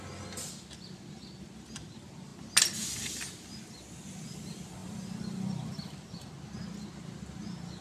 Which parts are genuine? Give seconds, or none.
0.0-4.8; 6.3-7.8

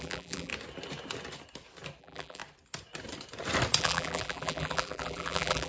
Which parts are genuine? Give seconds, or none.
0.5-2.0; 2.4-3.8